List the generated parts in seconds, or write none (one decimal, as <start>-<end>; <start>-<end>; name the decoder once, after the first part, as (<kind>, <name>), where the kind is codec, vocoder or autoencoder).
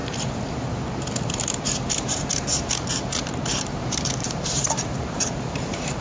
1.2-2.3 (vocoder, BigVGAN v2); 3.2-6.0